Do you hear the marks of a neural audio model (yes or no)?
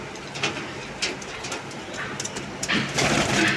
no